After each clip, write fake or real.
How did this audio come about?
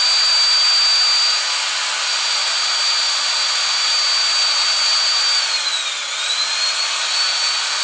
real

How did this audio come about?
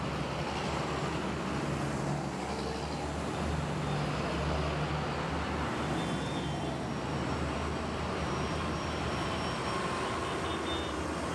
real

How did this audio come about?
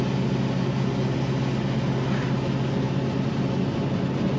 real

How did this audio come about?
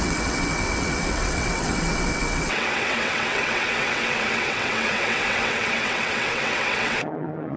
fake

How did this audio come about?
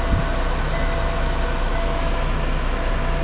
real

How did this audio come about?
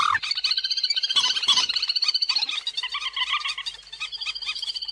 real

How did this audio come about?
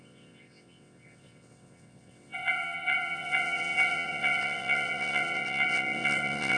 fake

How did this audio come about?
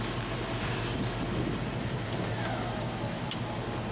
real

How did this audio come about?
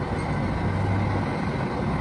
real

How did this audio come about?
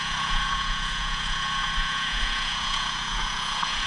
fake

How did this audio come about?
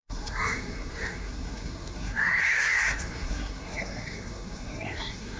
fake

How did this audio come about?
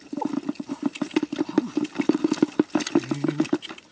real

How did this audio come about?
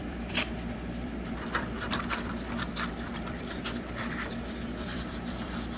fake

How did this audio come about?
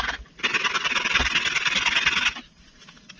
real